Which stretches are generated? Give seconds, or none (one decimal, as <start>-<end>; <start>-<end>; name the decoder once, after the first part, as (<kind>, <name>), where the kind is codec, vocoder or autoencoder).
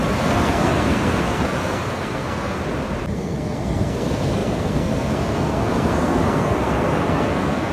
0.0-2.6 (codec, SNAC); 3.1-7.7